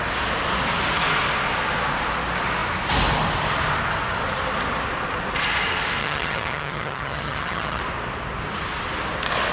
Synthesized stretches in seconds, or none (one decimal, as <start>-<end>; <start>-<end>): 6.0-7.8